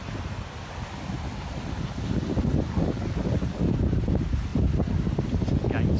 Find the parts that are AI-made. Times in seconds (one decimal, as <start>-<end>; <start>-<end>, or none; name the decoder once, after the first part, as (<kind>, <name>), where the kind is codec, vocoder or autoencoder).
none